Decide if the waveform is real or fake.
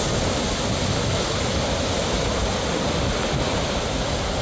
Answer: real